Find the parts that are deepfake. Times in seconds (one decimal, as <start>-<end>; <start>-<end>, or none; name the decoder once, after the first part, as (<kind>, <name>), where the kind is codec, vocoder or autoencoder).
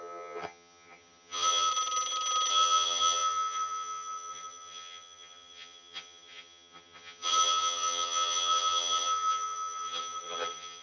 0.0-1.7 (vocoder, HiFi-GAN); 2.5-10.8